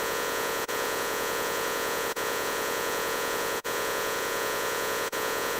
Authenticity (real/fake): fake